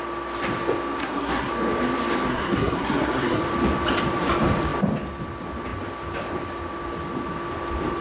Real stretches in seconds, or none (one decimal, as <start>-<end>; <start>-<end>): 0.0-1.0; 1.5-2.3; 3.4-8.0